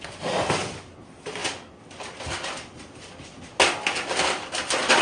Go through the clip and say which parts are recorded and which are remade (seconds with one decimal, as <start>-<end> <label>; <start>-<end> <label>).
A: 0.0-5.0 recorded